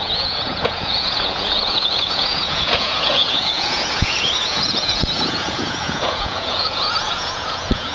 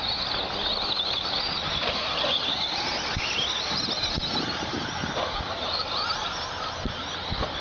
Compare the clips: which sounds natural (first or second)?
second